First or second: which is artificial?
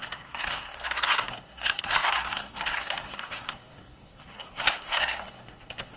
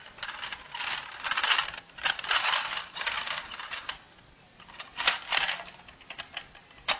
first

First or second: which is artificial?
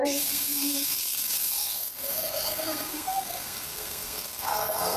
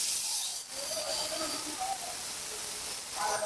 first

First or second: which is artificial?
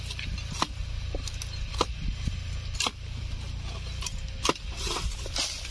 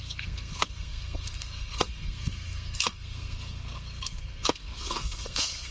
second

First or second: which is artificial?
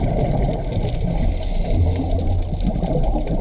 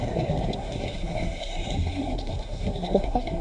second